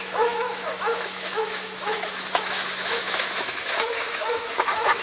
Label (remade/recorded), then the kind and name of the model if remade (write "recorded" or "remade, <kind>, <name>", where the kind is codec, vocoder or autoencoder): remade, autoencoder, DAC-VAE